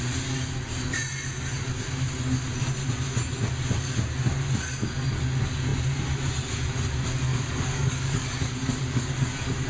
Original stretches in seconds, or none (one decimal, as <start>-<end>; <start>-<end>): 0.0-7.3; 9.1-9.7